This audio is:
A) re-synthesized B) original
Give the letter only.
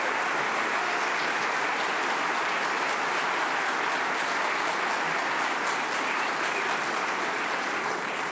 B